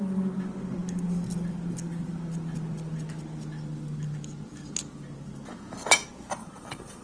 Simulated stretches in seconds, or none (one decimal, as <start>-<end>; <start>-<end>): 6.4-7.0